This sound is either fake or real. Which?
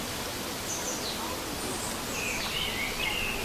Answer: real